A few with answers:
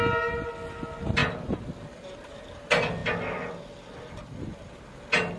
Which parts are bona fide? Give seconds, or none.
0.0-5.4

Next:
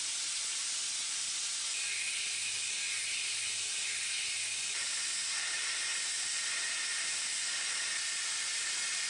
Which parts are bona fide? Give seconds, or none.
0.0-9.1

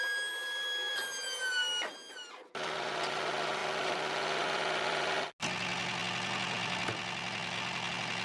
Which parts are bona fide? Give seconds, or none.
0.0-3.6; 4.2-8.2

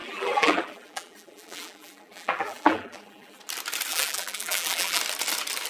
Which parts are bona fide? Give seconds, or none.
3.4-3.9; 5.0-5.7

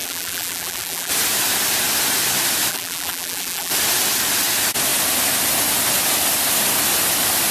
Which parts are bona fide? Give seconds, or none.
1.1-2.7; 3.7-7.5

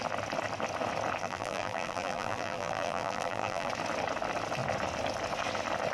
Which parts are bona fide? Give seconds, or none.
0.0-1.2; 3.7-5.9

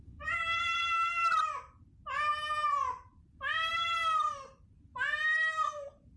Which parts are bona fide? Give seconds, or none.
1.2-2.5